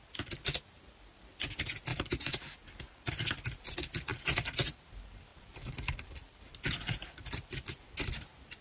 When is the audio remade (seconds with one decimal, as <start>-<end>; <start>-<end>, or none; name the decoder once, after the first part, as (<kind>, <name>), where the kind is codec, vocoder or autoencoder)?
1.9-3.1 (vocoder, BigVGAN v2); 4.1-4.8; 5.3-7.5